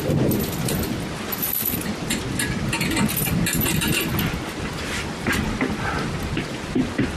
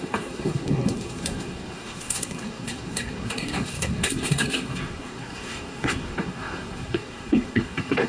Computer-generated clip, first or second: second